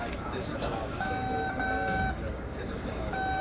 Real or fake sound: fake